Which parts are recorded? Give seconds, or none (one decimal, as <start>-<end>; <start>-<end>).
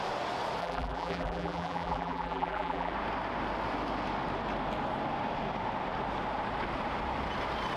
0.0-0.6; 2.9-7.8